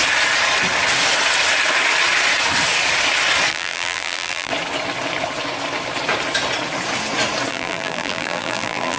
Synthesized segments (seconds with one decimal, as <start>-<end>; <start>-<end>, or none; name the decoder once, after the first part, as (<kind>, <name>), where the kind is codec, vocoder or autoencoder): 3.5-4.5 (vocoder, BigVGAN v2); 7.5-9.0